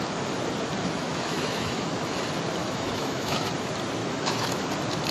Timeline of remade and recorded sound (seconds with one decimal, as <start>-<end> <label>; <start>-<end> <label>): 0.0-1.0 recorded; 1.0-2.2 remade; 2.2-2.6 recorded; 2.6-3.5 remade; 3.5-4.0 recorded; 4.0-4.6 remade; 4.6-5.1 recorded